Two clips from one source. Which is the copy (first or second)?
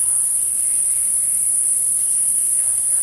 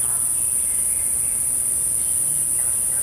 first